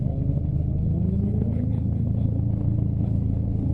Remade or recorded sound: remade